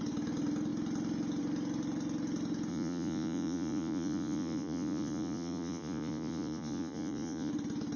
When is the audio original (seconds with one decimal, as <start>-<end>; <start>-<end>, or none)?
0.0-2.7; 7.5-8.0